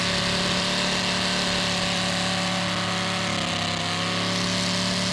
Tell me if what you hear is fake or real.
real